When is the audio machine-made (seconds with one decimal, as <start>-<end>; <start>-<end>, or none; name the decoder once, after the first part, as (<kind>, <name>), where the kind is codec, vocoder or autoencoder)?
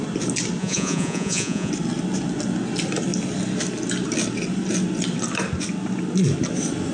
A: 0.6-1.7 (vocoder, Vocos)